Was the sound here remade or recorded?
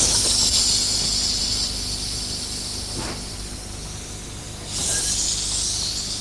recorded